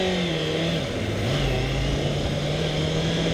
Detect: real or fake real